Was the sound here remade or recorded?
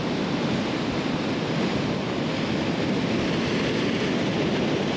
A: recorded